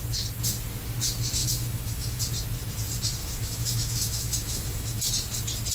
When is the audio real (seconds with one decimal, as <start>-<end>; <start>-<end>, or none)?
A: 0.0-1.4; 2.2-3.2; 5.0-5.7